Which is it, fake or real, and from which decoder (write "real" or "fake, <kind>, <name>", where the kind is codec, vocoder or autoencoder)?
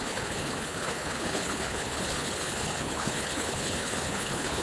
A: fake, codec, HILCodec